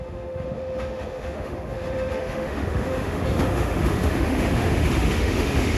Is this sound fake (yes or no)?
yes